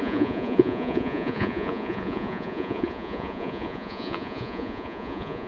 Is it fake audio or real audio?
fake